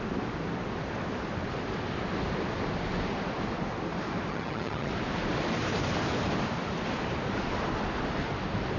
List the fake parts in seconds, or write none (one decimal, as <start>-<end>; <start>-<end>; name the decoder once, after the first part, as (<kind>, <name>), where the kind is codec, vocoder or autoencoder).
4.3-4.9 (vocoder, HiFi-GAN)